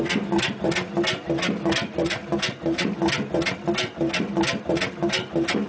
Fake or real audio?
real